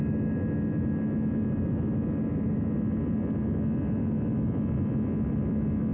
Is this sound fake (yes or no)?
no